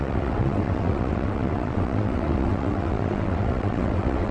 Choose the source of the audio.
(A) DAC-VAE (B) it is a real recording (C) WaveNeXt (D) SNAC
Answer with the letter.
C